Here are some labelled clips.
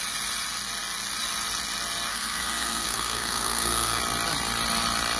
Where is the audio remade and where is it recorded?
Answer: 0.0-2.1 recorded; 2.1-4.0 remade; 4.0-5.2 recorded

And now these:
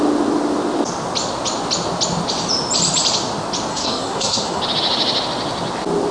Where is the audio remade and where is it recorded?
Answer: 0.0-3.7 recorded; 3.7-4.6 remade; 4.6-6.1 recorded